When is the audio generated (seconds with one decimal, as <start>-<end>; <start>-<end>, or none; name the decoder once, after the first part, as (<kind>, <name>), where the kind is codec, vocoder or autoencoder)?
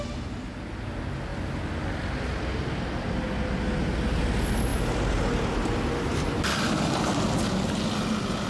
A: 4.7-5.4 (vocoder, BigVGAN v2)